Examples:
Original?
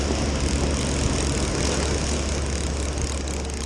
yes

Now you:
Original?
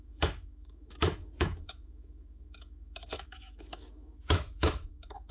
no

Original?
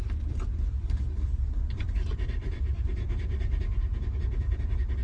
yes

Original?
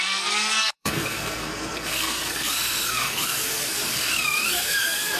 no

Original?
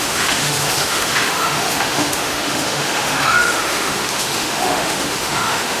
no